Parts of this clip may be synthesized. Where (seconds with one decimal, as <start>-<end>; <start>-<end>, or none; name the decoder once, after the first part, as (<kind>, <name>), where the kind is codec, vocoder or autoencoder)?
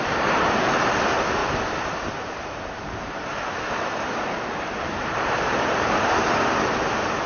1.4-5.8 (vocoder, BigVGAN v2)